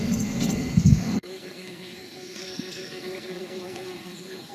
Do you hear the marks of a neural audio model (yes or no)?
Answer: yes